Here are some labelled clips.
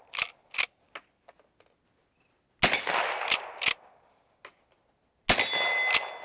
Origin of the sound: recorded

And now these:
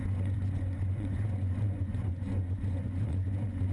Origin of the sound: remade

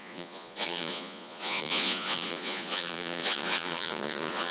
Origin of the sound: remade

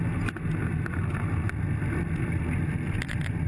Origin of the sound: recorded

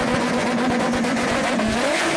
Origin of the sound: remade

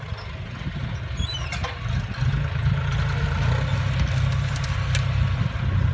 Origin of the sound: recorded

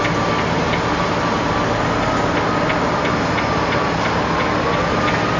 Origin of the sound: recorded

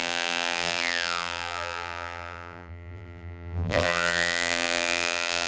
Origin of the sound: remade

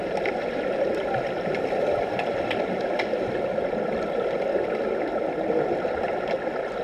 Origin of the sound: recorded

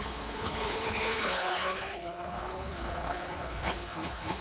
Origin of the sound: remade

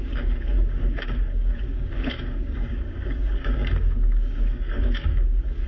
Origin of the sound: remade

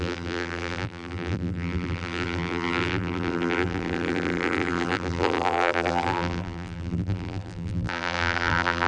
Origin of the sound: remade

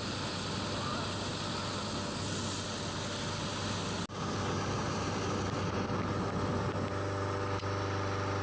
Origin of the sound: recorded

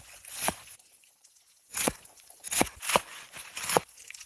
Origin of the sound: remade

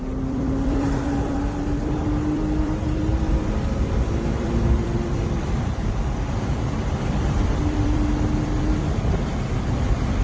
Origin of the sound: remade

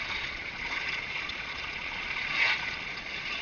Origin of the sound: remade